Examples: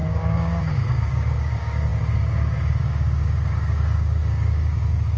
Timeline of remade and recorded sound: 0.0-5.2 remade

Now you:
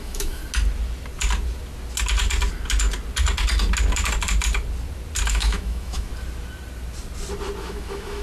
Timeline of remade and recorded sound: 0.0-0.4 remade; 0.4-5.3 recorded; 5.3-6.1 remade; 6.1-7.6 recorded; 7.6-8.2 remade

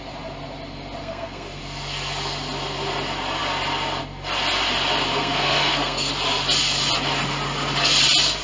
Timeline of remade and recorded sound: 0.0-1.0 recorded; 1.0-1.6 remade; 1.6-5.1 recorded; 5.1-6.1 remade; 6.1-8.4 recorded

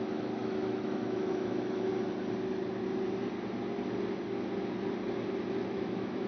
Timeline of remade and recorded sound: 0.0-1.9 remade; 1.9-5.7 recorded; 5.7-6.3 remade

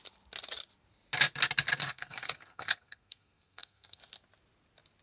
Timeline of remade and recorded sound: 0.0-1.8 recorded; 1.8-4.0 remade; 4.0-5.0 recorded

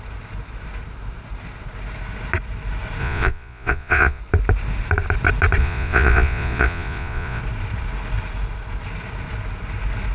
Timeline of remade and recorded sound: 0.0-3.0 recorded; 3.0-4.2 remade; 4.2-5.6 recorded; 5.6-7.4 remade; 7.4-10.1 recorded

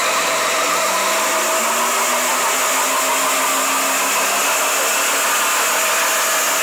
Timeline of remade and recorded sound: 0.0-1.1 remade; 1.1-6.6 recorded

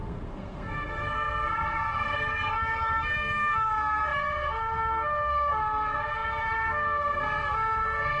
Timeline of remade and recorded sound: 0.0-8.2 remade